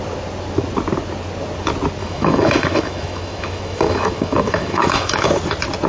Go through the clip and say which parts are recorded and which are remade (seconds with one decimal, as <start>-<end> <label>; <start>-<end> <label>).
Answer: 0.0-2.0 recorded; 2.0-5.3 remade; 5.3-5.9 recorded